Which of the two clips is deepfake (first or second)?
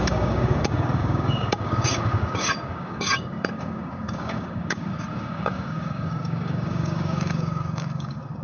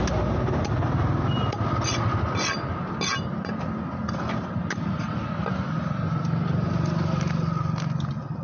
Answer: first